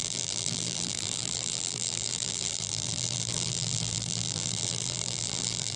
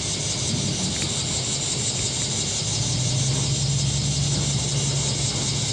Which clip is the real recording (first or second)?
second